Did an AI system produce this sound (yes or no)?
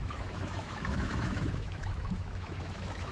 yes